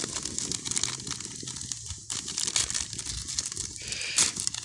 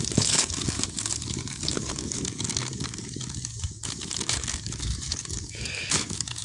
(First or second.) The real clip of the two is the first